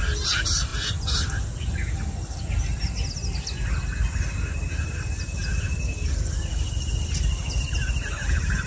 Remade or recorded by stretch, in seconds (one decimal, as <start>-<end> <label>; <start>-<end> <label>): 0.0-8.7 recorded